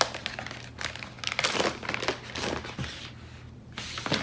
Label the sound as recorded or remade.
recorded